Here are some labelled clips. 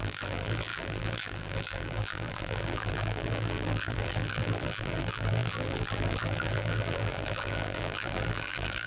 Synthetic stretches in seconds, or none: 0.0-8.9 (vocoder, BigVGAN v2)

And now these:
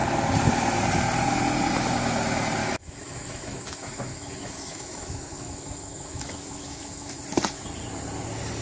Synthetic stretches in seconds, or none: 2.6-7.2 (autoencoder, DAC-VAE)

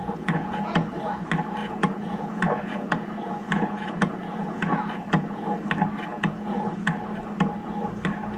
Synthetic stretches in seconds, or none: 0.0-1.0 (vocoder, Vocos); 1.6-5.4; 6.1-6.9

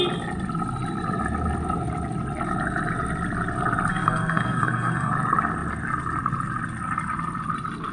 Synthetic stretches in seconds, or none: 3.9-5.1 (codec, SNAC)

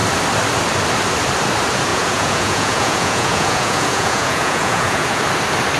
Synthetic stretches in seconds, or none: 1.9-5.2 (vocoder, Vocos)

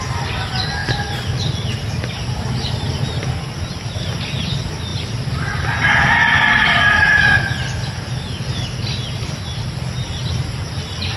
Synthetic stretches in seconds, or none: none

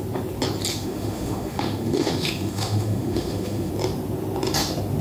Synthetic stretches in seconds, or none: 0.7-3.7 (autoencoder, DAC-VAE)